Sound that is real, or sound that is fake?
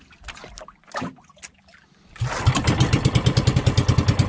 real